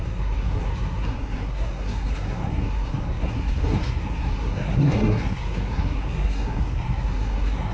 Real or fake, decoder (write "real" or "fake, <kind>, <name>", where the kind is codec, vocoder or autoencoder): fake, codec, SNAC